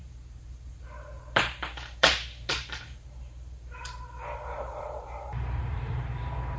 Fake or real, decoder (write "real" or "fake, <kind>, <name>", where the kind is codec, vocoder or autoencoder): fake, vocoder, BigVGAN v2